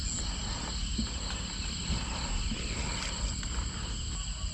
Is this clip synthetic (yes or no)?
no